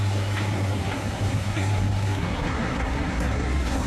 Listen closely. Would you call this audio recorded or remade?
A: remade